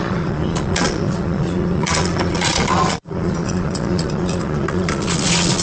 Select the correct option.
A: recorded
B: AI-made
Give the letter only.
B